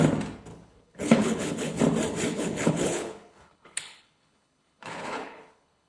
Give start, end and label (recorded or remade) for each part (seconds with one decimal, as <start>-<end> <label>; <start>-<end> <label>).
0.0-0.5 recorded; 0.5-1.8 remade; 1.8-2.3 recorded; 2.3-5.9 remade